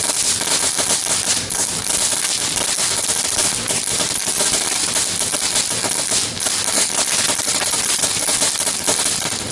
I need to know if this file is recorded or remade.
recorded